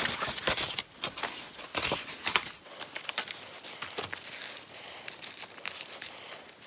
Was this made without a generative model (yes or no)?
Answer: yes